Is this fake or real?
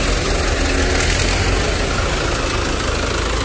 real